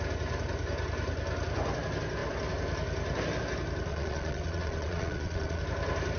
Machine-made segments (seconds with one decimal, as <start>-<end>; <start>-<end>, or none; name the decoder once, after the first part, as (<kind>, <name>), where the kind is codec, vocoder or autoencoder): 3.9-5.6 (vocoder, Vocos)